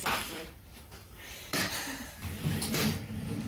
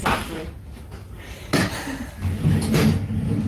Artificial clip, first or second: first